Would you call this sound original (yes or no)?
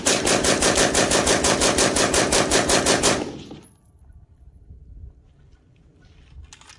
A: yes